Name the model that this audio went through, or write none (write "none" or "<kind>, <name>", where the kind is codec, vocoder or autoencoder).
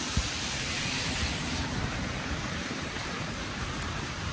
vocoder, BigVGAN v2